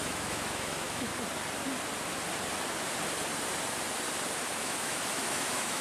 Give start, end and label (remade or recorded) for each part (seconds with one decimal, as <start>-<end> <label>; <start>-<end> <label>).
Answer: 0.0-1.1 remade; 1.1-4.6 recorded; 4.6-5.8 remade